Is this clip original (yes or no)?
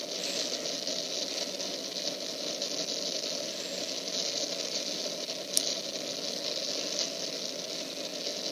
yes